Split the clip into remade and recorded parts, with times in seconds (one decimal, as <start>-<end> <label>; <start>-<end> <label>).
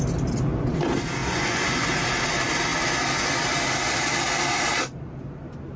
0.0-1.2 recorded; 1.2-1.9 remade; 1.9-5.8 recorded